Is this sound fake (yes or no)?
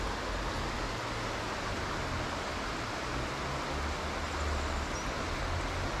no